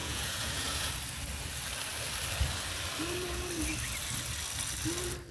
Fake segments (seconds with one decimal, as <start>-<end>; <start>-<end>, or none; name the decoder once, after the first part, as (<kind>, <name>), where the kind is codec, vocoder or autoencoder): 0.0-0.9 (vocoder, Vocos)